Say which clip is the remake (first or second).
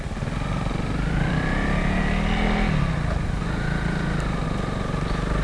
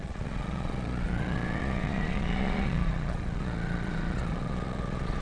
second